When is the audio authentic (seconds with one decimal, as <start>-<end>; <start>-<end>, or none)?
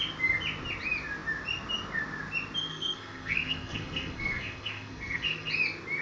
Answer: 0.0-2.7; 5.5-6.0